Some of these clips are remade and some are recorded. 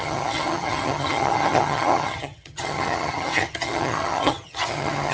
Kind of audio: remade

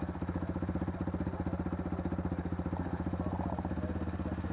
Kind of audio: recorded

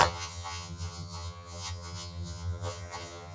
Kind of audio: remade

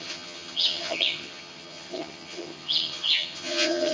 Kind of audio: remade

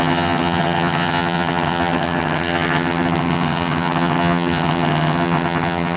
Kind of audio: remade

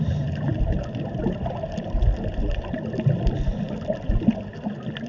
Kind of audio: recorded